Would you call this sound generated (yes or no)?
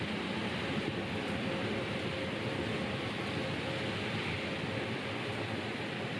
no